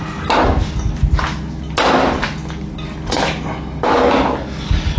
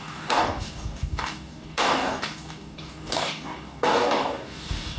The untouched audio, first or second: first